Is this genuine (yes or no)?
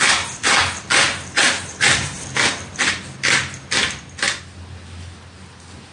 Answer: yes